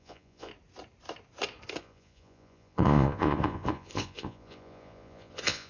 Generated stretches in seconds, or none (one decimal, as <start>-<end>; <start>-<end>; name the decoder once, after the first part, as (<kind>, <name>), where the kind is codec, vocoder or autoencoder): 0.0-0.5 (vocoder, Vocos); 1.8-5.7